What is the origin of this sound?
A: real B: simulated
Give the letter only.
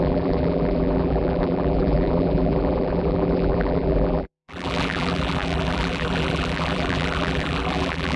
B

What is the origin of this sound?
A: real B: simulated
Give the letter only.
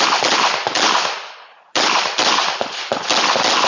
A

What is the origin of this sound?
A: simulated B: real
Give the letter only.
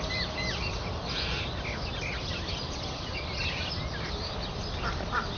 A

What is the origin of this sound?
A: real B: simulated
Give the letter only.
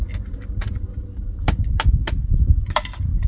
A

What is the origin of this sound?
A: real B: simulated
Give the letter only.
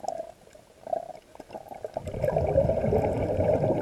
A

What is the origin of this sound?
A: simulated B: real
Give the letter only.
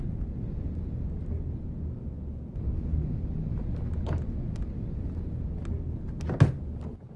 B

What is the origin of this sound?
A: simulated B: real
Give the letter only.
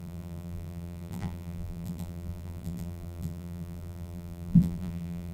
A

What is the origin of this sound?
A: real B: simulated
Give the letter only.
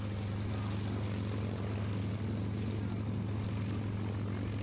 A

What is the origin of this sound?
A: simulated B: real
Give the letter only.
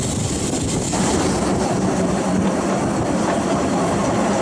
B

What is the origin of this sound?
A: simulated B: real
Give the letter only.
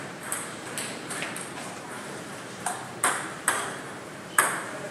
A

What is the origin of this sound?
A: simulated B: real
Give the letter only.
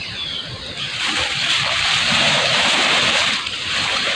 A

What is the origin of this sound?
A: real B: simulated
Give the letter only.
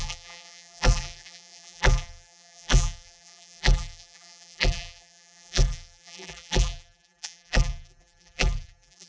B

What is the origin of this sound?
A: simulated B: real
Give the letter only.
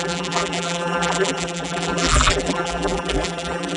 A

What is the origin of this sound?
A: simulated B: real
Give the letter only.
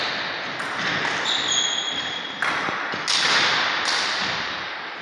B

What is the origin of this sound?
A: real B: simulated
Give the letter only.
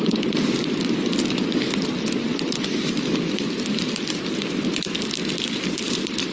B